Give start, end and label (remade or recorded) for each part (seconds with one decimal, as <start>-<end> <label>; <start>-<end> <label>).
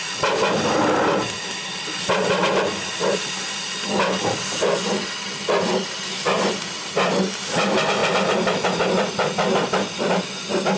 0.0-10.8 recorded